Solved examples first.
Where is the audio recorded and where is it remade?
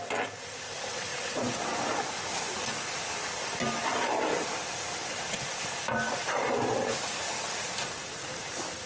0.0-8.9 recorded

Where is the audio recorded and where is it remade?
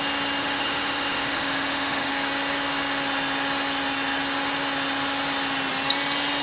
0.0-0.4 recorded; 0.4-2.1 remade; 2.1-6.4 recorded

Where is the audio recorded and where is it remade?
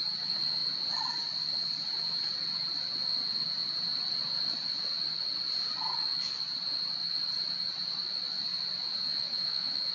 0.0-9.3 recorded; 9.3-9.9 remade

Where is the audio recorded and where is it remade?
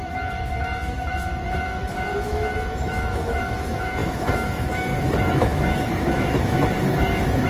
0.0-7.5 remade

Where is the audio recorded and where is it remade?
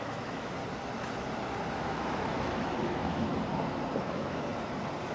0.0-0.6 remade; 0.6-1.7 recorded; 1.7-3.3 remade; 3.3-4.0 recorded; 4.0-4.5 remade; 4.5-5.1 recorded